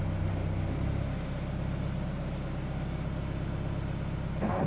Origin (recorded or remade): recorded